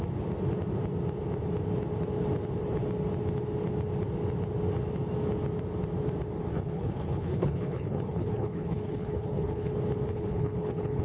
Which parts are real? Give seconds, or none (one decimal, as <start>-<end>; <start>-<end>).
0.0-6.5; 9.7-10.1